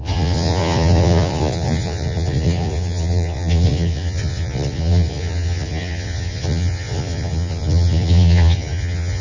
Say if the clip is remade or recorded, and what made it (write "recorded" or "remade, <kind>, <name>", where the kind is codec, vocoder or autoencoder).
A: remade, vocoder, Vocos